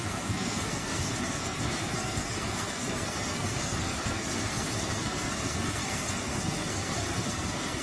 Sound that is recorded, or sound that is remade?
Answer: remade